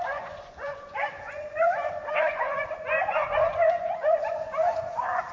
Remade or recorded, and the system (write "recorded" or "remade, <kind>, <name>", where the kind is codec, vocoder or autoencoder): remade, vocoder, Vocos